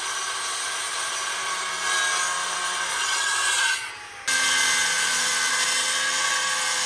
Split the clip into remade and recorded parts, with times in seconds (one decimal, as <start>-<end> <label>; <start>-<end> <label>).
0.0-2.9 recorded; 2.9-3.9 remade; 3.9-6.9 recorded